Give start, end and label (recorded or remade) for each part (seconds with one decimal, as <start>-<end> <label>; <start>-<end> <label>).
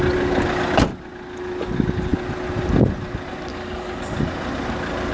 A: 0.0-3.5 recorded; 3.5-4.0 remade; 4.0-5.1 recorded